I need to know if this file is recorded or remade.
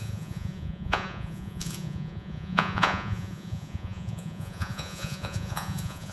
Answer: remade